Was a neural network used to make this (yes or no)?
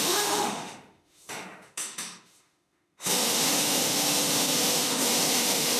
yes